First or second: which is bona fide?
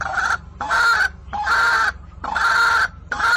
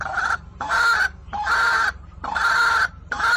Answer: first